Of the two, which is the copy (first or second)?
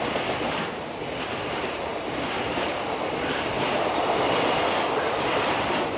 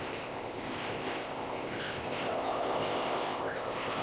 second